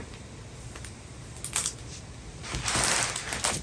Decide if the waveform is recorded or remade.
recorded